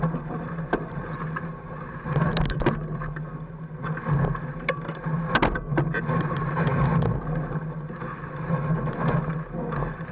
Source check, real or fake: real